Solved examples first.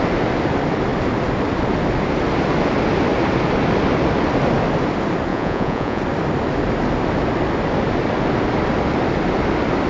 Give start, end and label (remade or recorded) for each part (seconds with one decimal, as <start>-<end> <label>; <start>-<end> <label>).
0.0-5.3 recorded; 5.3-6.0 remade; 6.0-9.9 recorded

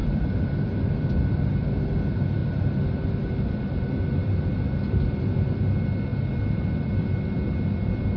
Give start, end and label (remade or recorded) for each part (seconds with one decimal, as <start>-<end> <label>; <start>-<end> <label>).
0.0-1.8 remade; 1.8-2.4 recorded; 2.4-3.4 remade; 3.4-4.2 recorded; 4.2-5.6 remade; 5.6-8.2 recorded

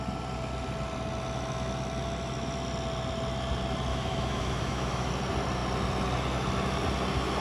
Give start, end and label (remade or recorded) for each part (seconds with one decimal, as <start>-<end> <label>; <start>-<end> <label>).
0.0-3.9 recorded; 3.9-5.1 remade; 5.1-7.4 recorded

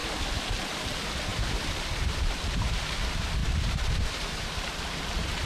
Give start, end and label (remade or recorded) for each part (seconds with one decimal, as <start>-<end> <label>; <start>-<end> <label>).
0.0-0.5 remade; 0.5-1.3 recorded; 1.3-2.8 remade; 2.8-3.4 recorded; 3.4-4.4 remade; 4.4-5.5 recorded

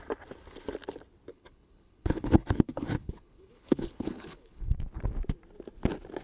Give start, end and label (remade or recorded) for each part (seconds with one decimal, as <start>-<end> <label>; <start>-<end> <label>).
0.0-1.3 recorded; 1.3-4.8 remade; 4.8-6.2 recorded

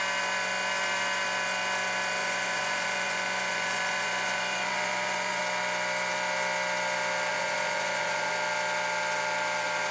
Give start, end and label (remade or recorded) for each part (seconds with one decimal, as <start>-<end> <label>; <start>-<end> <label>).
0.0-2.2 recorded; 2.2-5.4 remade; 5.4-7.3 recorded; 7.3-8.3 remade; 8.3-9.9 recorded

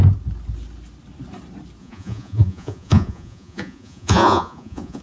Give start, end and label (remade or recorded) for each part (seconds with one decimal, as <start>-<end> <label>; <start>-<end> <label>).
0.0-1.8 recorded; 1.8-5.0 remade